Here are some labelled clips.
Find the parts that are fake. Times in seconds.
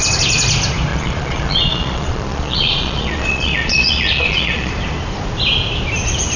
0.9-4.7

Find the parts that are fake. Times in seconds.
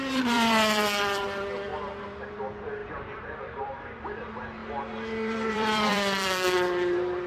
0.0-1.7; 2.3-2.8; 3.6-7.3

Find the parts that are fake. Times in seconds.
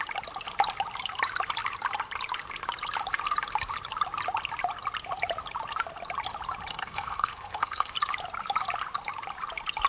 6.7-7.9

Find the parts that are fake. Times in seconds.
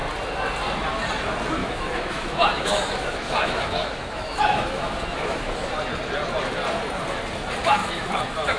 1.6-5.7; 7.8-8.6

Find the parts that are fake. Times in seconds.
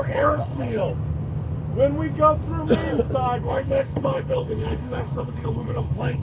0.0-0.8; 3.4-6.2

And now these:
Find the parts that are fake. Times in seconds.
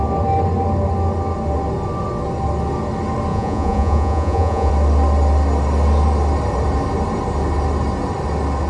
3.3-4.7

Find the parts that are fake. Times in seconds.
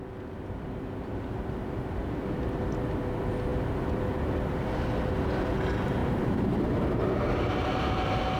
6.0-7.5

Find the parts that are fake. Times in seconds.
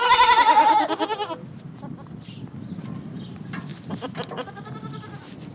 none